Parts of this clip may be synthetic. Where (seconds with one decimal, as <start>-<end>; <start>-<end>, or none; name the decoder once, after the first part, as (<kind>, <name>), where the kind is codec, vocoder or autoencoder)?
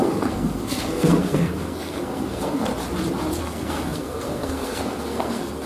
0.0-2.7 (codec, SNAC); 3.4-5.7